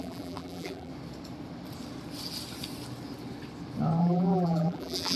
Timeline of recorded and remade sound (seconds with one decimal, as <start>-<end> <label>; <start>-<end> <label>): 0.0-0.9 remade; 0.9-4.0 recorded; 4.0-5.2 remade